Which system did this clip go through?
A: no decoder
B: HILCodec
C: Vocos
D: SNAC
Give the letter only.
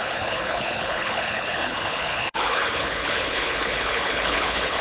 B